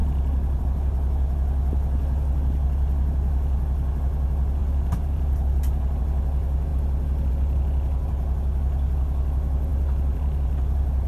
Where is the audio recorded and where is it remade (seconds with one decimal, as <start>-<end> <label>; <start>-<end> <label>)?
0.0-4.6 recorded; 4.6-6.0 remade; 6.0-9.7 recorded; 9.7-11.1 remade